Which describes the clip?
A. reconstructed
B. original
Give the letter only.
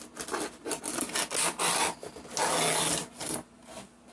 B